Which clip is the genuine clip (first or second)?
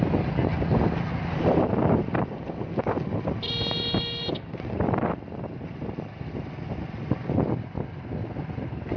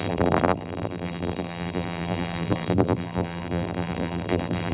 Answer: first